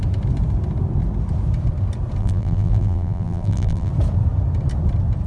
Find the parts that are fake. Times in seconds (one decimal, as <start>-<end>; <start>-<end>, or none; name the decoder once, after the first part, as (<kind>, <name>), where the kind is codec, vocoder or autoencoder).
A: 2.2-3.9 (vocoder, BigVGAN v2)